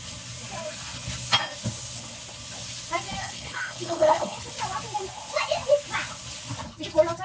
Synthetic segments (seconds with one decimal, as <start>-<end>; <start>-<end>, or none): 3.2-4.5